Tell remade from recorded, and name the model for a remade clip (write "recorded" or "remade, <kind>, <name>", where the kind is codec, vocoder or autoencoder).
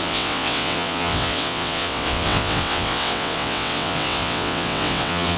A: remade, vocoder, WaveNeXt